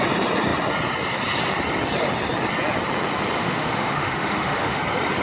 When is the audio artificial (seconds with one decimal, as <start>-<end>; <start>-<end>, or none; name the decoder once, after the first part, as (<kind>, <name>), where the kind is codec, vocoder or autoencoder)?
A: 3.4-4.8 (autoencoder, DAC-VAE)